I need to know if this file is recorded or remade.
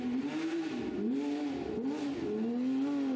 recorded